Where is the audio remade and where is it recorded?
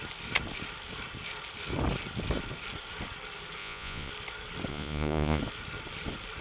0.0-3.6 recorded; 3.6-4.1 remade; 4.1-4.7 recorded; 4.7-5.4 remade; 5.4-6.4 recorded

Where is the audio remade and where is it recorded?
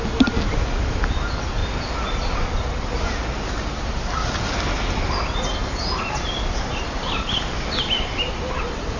0.0-9.0 recorded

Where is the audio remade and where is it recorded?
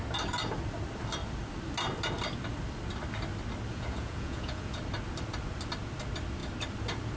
0.0-3.7 recorded; 3.7-4.8 remade; 4.8-7.2 recorded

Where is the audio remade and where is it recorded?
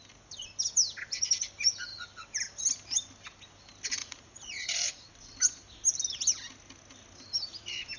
0.0-4.0 recorded; 4.0-5.1 remade; 5.1-8.0 recorded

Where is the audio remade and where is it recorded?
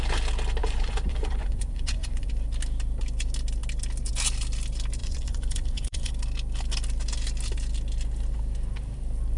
0.0-0.6 recorded; 0.6-2.3 remade; 2.3-5.0 recorded; 5.0-6.1 remade; 6.1-9.4 recorded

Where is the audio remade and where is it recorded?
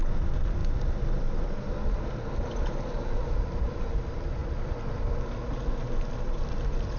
0.0-7.0 recorded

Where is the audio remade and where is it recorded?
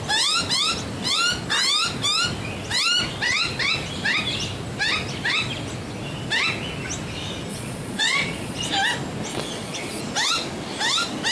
0.0-7.5 recorded; 7.5-8.7 remade; 8.7-9.3 recorded; 9.3-10.0 remade; 10.0-11.3 recorded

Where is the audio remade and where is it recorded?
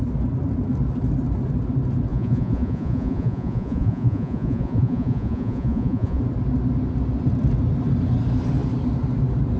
0.0-2.1 recorded; 2.1-6.2 remade; 6.2-9.6 recorded